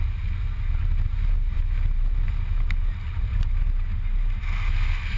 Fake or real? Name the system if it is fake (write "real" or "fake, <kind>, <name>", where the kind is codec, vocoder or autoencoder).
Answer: real